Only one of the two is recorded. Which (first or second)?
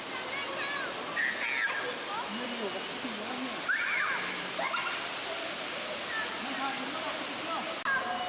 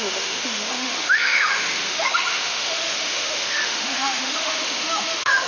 first